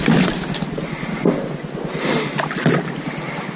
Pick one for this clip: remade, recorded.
recorded